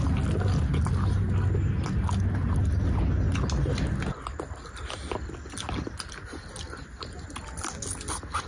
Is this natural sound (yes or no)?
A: yes